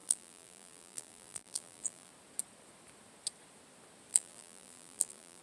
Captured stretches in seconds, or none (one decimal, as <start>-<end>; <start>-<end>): 2.1-4.1